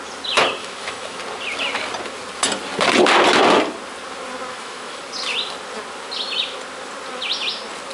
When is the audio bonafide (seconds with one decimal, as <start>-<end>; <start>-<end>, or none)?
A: 0.0-0.6; 1.2-4.5; 5.0-7.9